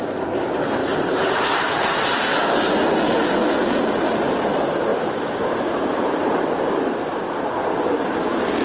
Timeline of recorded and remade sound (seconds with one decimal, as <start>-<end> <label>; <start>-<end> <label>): 0.0-0.8 recorded; 0.8-2.3 remade; 2.3-4.9 recorded; 4.9-6.9 remade; 6.9-8.6 recorded

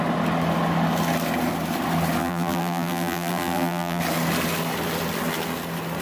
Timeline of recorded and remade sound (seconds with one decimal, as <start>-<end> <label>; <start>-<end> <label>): 0.0-2.2 recorded; 2.2-4.0 remade; 4.0-6.0 recorded

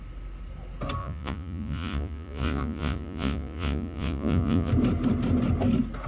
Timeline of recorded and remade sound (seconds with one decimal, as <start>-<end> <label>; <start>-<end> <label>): 0.0-1.0 recorded; 1.0-4.7 remade; 4.7-6.1 recorded